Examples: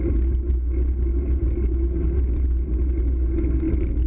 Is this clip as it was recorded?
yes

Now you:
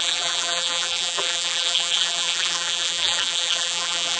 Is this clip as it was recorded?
no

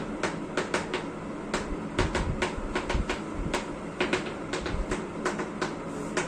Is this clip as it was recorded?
yes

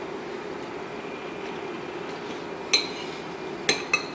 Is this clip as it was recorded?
yes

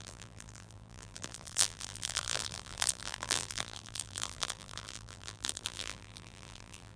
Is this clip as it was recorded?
no